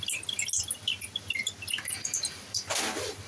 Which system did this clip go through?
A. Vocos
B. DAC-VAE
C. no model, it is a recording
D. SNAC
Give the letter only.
C